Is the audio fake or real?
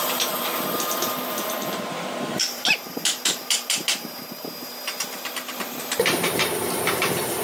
fake